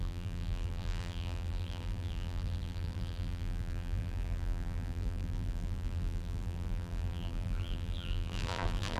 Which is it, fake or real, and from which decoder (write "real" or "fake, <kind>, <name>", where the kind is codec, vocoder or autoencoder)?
fake, vocoder, BigVGAN v2